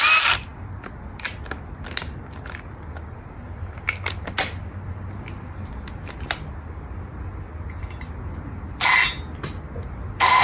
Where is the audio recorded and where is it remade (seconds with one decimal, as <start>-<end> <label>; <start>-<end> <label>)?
0.0-10.4 recorded